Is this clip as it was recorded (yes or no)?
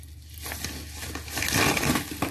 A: yes